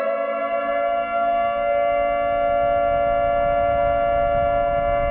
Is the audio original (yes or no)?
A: yes